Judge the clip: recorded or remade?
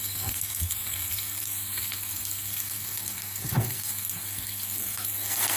remade